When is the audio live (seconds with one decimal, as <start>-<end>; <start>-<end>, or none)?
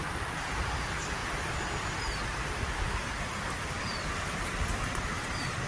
0.0-5.7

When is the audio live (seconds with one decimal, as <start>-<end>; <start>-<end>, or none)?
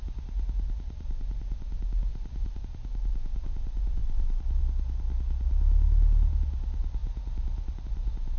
0.0-2.1; 2.6-7.0; 7.8-8.4